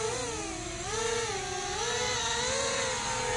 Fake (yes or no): no